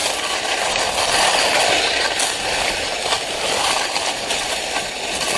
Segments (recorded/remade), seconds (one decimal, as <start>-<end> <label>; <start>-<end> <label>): 0.0-5.4 recorded